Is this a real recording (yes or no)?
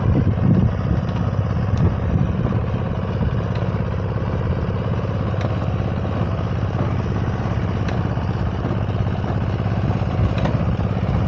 yes